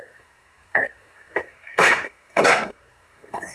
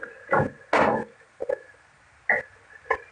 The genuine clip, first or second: second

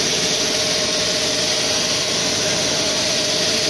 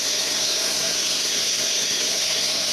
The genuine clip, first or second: first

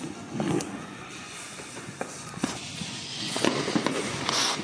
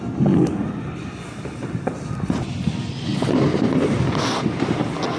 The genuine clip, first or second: second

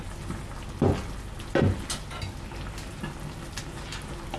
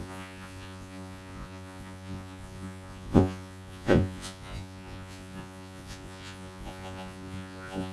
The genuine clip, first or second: first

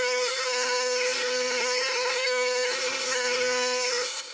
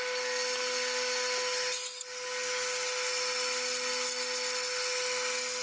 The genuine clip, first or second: second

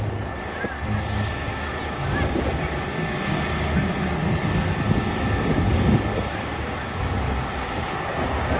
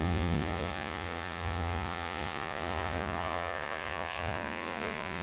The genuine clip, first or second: first